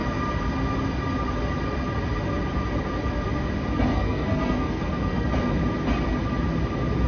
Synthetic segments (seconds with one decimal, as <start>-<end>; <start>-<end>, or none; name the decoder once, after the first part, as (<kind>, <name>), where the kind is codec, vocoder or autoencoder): 3.9-5.3 (codec, SNAC)